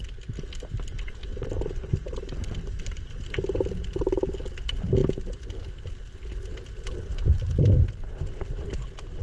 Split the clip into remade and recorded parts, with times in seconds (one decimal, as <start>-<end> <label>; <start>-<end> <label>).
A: 0.0-1.3 recorded; 1.3-3.2 remade; 3.2-7.1 recorded; 7.1-7.7 remade; 7.7-9.2 recorded